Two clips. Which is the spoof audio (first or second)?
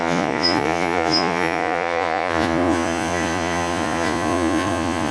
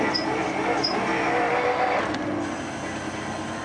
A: first